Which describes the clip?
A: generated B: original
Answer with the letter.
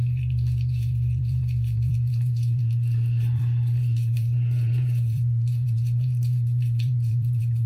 A